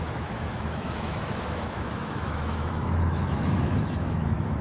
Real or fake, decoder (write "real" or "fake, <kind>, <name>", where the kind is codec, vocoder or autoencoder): fake, autoencoder, DAC-VAE